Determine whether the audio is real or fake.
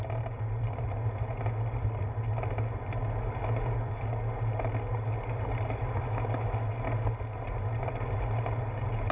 real